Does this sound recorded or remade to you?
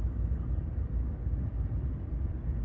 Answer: recorded